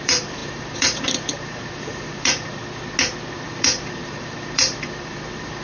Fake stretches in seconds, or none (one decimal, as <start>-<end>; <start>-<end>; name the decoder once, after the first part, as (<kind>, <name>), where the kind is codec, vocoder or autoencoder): 0.0-2.6 (vocoder, BigVGAN v2); 3.3-5.6